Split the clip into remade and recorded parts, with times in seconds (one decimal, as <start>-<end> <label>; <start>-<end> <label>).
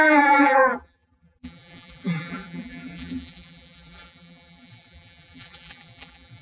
0.0-6.4 remade